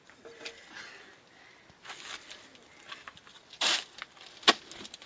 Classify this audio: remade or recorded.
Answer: recorded